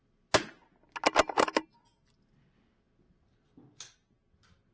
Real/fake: real